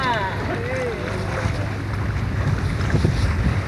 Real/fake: real